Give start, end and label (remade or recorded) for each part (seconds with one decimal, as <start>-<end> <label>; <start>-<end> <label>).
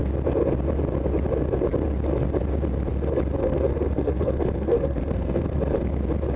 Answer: 0.0-3.4 recorded; 3.4-5.6 remade; 5.6-6.4 recorded